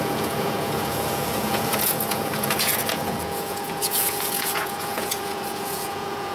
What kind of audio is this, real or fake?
fake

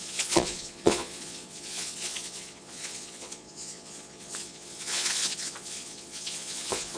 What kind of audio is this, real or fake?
fake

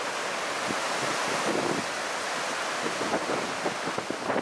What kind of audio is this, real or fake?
real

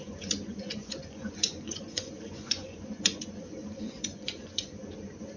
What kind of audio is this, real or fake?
fake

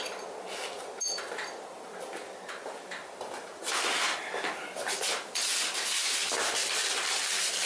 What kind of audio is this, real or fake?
real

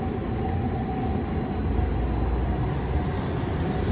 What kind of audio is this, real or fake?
real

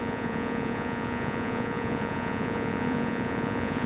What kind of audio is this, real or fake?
fake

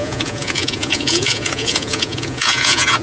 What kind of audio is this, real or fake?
fake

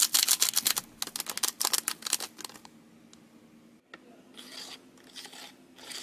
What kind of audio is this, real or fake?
real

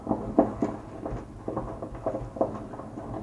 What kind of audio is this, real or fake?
real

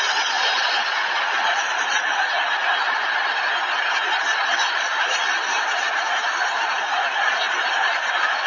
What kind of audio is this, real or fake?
real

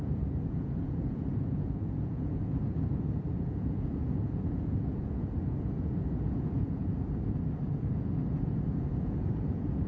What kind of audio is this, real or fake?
fake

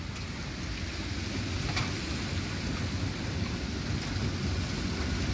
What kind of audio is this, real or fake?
real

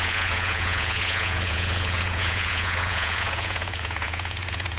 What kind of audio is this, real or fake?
fake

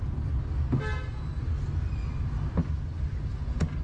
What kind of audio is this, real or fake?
real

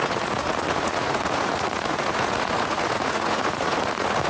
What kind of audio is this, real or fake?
fake